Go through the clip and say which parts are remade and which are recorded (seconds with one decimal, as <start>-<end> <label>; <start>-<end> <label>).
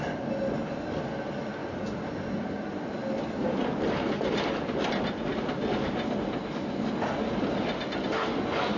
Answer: 0.0-8.8 recorded